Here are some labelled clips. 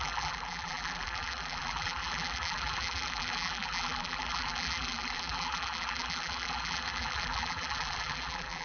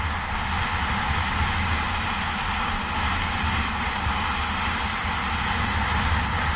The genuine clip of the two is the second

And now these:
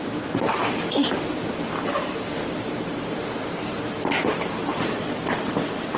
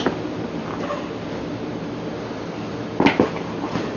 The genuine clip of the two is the second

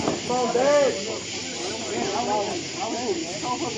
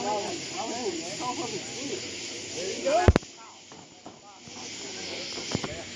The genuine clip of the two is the second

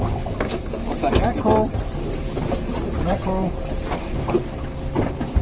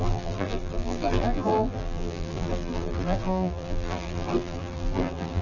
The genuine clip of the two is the first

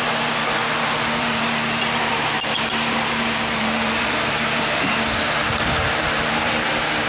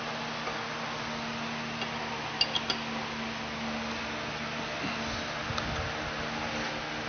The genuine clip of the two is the second